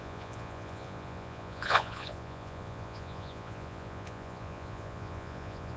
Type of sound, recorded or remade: remade